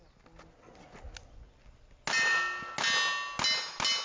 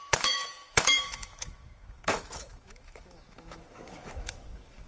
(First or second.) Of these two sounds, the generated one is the second